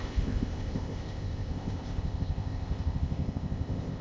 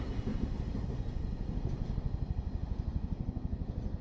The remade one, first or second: first